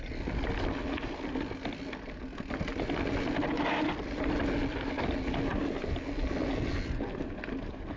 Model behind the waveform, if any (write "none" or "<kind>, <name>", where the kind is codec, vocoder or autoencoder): none